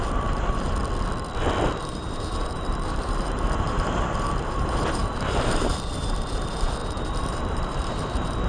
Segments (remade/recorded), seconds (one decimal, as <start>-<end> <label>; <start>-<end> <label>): 0.0-0.8 remade; 0.8-1.8 recorded; 1.8-8.5 remade